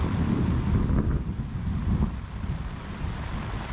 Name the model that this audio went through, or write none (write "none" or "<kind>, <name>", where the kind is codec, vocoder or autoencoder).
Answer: none